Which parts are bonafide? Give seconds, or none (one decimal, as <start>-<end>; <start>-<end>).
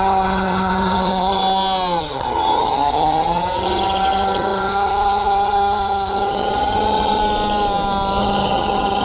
1.4-2.0; 7.2-8.2